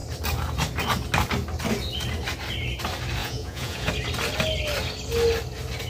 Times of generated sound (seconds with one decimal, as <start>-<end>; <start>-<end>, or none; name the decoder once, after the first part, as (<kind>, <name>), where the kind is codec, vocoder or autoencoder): 3.2-3.9 (vocoder, Vocos)